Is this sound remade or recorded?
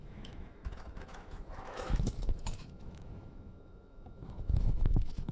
remade